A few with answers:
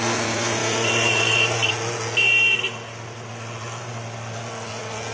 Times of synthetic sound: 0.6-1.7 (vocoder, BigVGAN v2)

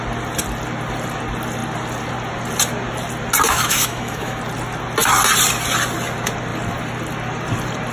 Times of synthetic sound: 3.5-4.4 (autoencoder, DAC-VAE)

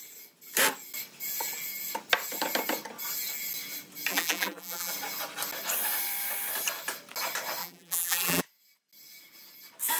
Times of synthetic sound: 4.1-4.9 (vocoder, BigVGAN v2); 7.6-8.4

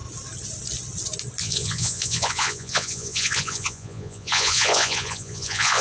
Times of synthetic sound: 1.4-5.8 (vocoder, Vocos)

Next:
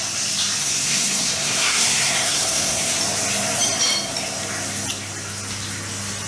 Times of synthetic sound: 0.6-3.0 (codec, SNAC)

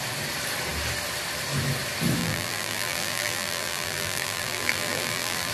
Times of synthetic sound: 2.2-5.5 (vocoder, BigVGAN v2)

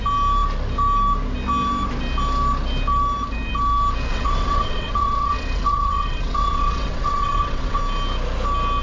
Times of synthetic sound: 4.1-7.8 (vocoder, WaveNeXt)

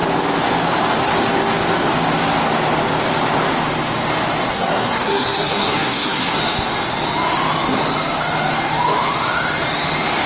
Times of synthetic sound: 4.5-6.4 (codec, SNAC)